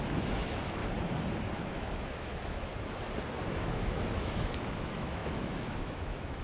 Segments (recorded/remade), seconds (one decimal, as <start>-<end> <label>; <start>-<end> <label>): 0.0-0.8 remade; 0.8-1.7 recorded; 1.7-2.7 remade; 2.7-3.5 recorded; 3.5-6.4 remade